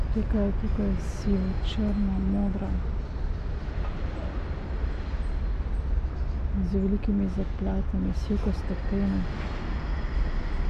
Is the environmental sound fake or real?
real